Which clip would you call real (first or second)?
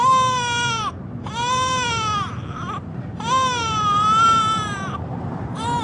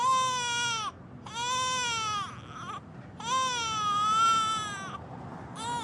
second